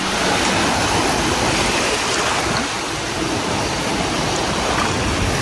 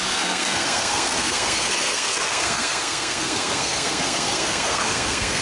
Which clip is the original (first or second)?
first